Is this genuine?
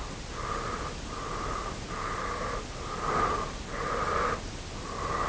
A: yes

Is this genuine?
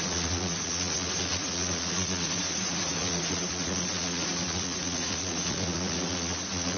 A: no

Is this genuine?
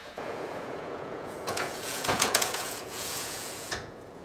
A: no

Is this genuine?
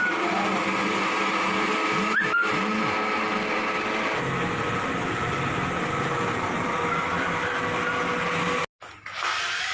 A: yes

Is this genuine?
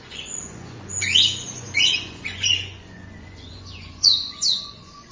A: no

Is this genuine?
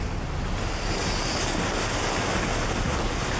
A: yes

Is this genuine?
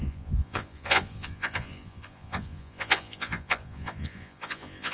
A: no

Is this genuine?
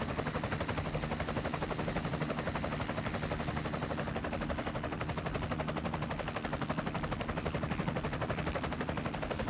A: yes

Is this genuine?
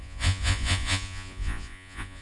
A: no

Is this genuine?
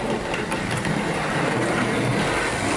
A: yes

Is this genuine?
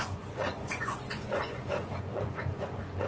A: no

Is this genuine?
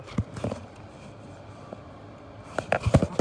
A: yes